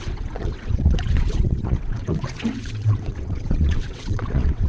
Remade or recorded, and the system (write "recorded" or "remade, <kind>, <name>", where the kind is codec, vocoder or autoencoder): remade, vocoder, WaveNeXt